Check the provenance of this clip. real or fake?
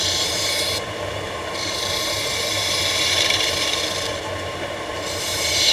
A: fake